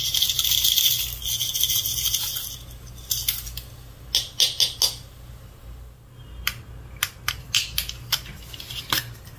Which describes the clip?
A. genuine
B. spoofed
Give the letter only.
A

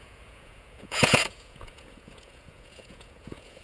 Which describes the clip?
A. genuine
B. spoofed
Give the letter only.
B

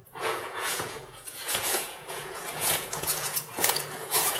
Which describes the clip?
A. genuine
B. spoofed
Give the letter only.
B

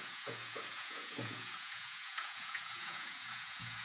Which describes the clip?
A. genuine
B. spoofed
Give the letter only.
B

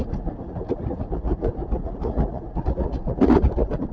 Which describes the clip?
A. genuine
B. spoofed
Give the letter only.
B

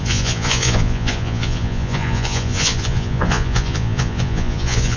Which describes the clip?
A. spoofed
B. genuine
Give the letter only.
A